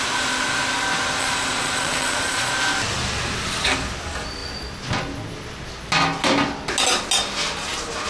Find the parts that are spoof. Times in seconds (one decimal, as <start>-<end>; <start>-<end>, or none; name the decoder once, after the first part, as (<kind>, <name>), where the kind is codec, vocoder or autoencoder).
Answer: 1.2-2.5 (vocoder, Vocos)